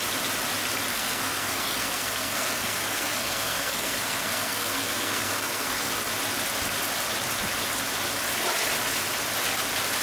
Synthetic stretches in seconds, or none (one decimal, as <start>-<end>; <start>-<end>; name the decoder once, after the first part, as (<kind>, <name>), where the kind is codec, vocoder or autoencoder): 0.9-5.9 (codec, SNAC)